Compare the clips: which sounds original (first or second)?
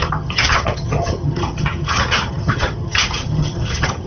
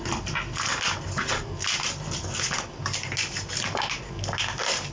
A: second